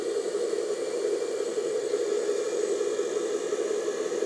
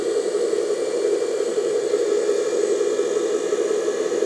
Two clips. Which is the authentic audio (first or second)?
second